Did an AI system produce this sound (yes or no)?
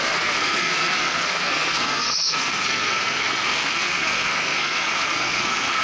yes